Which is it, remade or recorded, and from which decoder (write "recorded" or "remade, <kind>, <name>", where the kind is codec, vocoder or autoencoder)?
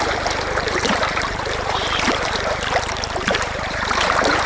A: remade, vocoder, BigVGAN v2